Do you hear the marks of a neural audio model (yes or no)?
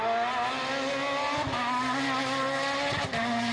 no